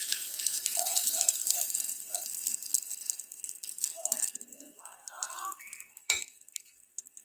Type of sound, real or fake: fake